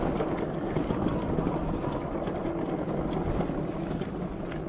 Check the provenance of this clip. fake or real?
real